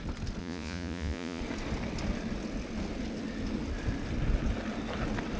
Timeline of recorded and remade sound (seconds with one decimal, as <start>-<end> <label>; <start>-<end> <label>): 0.0-0.4 recorded; 0.4-1.4 remade; 1.4-5.4 recorded